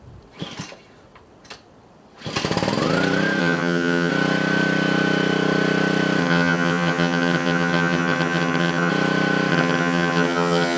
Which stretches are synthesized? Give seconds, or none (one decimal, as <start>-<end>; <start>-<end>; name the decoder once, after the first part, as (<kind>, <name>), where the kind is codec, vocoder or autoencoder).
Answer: 3.4-4.1 (vocoder, HiFi-GAN); 6.2-8.9; 9.5-10.8